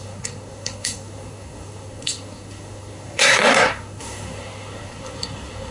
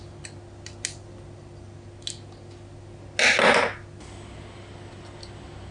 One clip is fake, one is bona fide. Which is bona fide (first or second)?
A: second